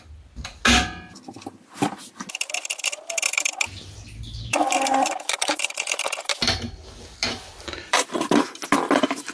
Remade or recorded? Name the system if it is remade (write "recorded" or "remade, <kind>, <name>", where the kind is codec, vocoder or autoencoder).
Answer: recorded